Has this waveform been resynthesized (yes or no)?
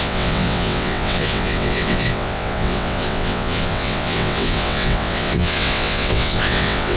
yes